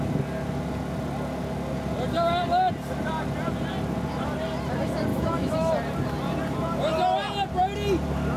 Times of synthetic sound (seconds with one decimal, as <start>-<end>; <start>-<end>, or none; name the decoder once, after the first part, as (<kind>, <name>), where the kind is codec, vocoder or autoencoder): 5.1-5.7 (autoencoder, DAC-VAE)